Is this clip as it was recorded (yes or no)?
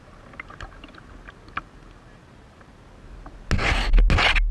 yes